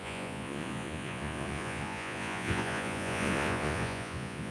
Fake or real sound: fake